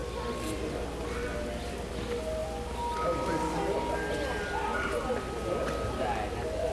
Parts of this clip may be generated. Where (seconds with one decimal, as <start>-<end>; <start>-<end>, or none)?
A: none